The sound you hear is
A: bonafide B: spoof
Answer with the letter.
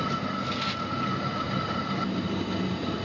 A